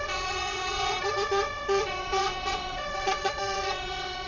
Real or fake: fake